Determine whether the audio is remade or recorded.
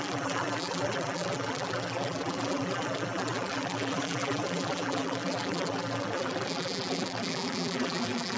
remade